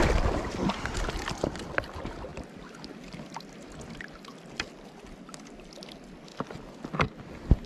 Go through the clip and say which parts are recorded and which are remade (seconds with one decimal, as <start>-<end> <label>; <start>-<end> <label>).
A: 0.0-2.3 recorded; 2.3-3.8 remade; 3.8-4.3 recorded; 4.3-5.2 remade; 5.2-6.3 recorded; 6.3-7.3 remade; 7.3-7.7 recorded